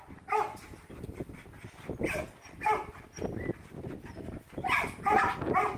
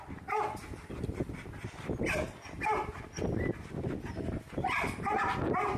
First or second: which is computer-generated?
first